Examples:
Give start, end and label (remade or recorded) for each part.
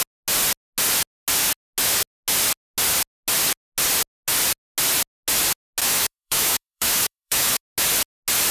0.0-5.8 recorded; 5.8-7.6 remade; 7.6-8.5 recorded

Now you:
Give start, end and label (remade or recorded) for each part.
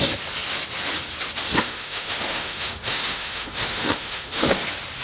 0.0-1.6 recorded; 1.6-4.6 remade; 4.6-5.0 recorded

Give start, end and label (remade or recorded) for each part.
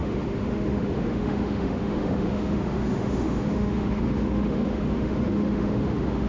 0.0-6.3 remade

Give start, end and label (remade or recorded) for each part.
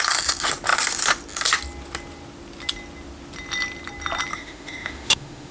0.0-4.3 recorded; 4.3-5.5 remade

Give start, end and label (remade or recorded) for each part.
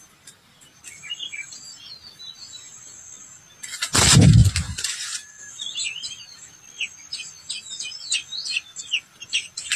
0.0-9.8 recorded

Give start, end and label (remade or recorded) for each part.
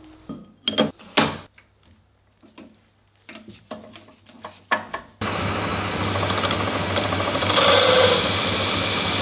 0.0-9.2 recorded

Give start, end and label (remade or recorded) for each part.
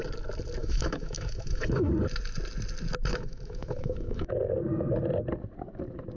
0.0-0.6 recorded; 0.6-1.9 remade; 1.9-3.1 recorded; 3.1-4.3 remade; 4.3-6.2 recorded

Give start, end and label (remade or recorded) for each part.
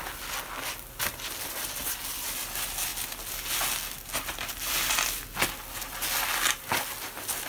0.0-7.5 recorded